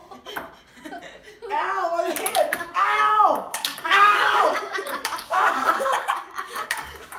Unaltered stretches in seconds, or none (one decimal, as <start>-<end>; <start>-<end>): 0.0-2.3